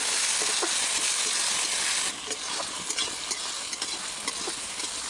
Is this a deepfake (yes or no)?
no